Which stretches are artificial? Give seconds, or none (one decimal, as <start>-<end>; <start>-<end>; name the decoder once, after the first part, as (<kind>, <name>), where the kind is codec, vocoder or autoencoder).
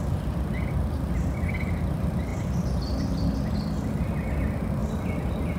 none